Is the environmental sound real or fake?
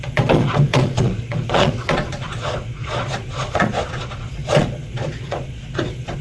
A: fake